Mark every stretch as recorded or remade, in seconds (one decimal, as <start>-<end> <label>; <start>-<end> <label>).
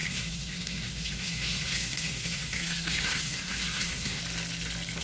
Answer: 0.0-4.2 remade; 4.2-5.0 recorded